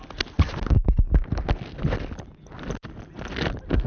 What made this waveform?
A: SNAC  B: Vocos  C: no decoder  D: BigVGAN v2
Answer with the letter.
C